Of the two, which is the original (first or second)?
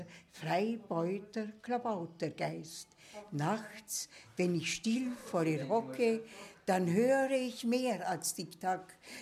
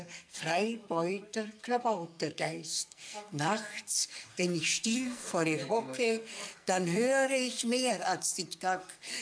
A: first